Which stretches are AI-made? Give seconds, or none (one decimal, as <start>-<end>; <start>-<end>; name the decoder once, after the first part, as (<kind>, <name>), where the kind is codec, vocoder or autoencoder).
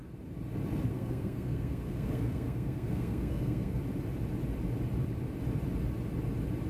0.9-3.8 (codec, SNAC)